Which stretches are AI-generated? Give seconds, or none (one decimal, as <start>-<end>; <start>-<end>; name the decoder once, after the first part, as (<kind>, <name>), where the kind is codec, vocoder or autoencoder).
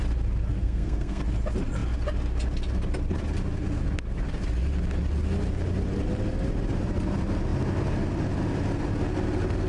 0.6-1.2 (codec, SNAC)